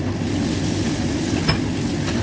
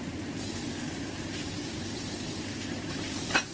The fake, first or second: second